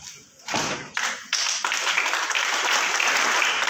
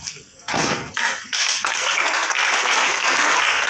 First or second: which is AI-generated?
second